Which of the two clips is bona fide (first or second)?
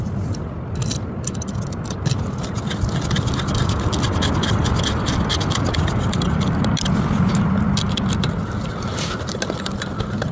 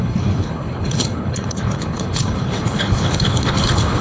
first